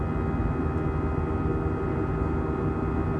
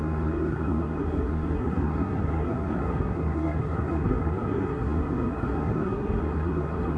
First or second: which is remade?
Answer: second